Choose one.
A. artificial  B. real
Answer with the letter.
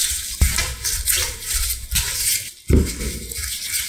B